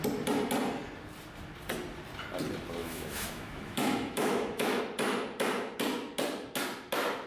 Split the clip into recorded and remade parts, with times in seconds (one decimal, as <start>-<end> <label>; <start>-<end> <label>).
0.0-2.8 recorded; 2.8-4.8 remade; 4.8-7.3 recorded